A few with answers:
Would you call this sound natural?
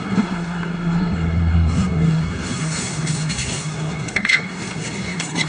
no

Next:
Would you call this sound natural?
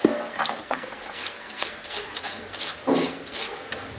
no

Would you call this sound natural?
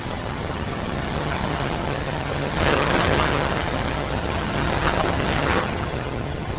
no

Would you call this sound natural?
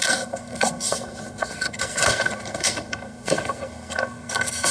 no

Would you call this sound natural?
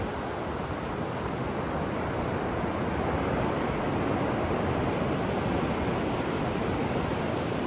yes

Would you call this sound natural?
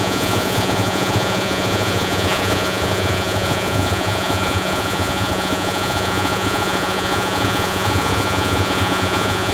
no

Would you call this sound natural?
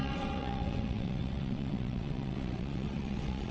no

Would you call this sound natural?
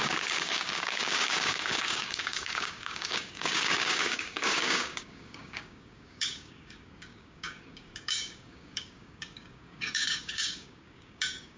no